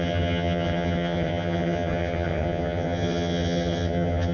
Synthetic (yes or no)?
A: yes